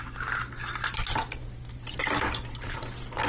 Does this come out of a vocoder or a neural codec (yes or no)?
no